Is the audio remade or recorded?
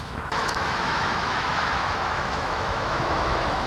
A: remade